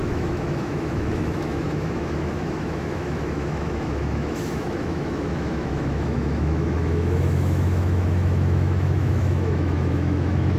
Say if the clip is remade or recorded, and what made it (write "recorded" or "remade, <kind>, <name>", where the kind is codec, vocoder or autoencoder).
remade, autoencoder, DAC-VAE